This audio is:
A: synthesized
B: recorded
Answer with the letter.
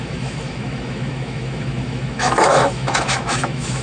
A